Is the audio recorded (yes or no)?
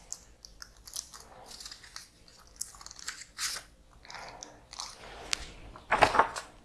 yes